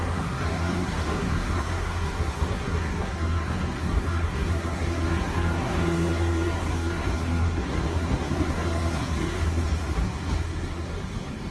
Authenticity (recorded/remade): remade